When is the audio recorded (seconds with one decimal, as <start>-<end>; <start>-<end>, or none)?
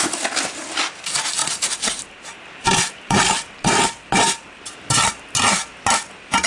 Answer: 0.0-1.4; 5.1-6.5